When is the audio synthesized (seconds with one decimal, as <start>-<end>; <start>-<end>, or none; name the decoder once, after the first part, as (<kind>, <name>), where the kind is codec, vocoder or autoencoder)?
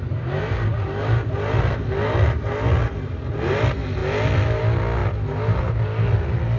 none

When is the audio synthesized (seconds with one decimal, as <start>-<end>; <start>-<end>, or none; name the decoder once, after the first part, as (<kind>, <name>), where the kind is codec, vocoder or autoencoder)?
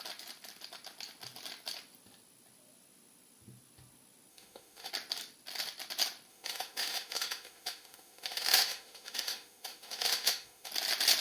4.3-4.9 (autoencoder, DAC-VAE); 6.3-10.7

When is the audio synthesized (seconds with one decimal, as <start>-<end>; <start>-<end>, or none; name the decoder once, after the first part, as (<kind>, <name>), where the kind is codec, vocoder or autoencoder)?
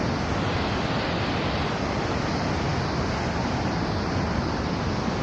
none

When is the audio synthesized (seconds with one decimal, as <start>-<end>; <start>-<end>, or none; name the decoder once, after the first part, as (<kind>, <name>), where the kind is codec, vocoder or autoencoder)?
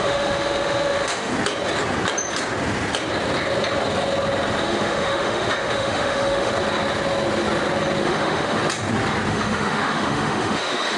0.0-1.3 (autoencoder, DAC-VAE); 4.6-6.5; 8.0-8.6; 9.3-11.0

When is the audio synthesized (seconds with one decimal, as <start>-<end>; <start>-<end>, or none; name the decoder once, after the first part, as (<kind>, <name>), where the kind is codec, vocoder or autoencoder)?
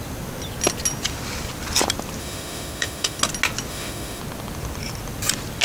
2.2-3.2 (autoencoder, DAC-VAE); 3.7-4.2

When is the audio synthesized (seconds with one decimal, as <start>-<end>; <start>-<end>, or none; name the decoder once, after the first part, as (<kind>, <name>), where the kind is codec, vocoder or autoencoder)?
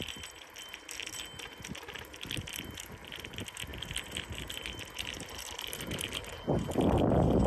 none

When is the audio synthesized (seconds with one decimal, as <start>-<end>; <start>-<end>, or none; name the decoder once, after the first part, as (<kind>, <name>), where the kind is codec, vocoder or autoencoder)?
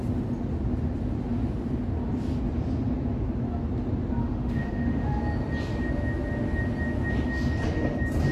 4.2-5.2 (autoencoder, DAC-VAE)